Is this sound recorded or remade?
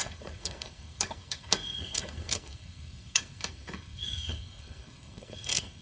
remade